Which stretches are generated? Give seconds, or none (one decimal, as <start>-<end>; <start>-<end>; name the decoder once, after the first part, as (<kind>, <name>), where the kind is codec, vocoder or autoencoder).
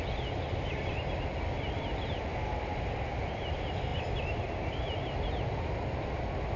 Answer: none